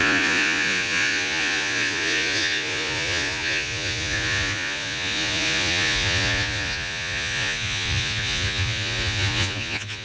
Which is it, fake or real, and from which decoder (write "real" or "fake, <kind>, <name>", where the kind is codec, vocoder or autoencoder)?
fake, vocoder, Vocos